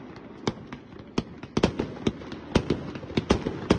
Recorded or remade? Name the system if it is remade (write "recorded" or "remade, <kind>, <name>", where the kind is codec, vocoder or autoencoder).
recorded